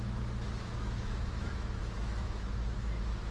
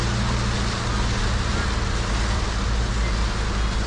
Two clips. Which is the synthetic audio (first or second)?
first